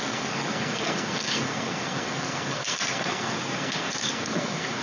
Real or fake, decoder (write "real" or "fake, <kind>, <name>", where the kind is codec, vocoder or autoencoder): fake, codec, SNAC